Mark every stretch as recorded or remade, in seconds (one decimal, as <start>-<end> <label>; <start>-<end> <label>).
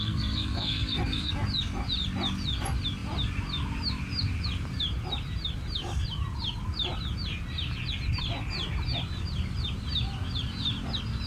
0.0-1.3 remade; 1.3-11.3 recorded